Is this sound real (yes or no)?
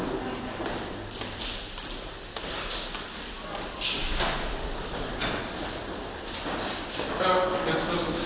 yes